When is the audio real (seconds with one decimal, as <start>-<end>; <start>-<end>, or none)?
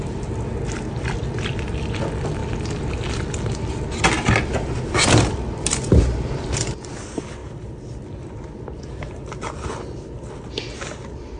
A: 0.0-7.4; 8.4-11.4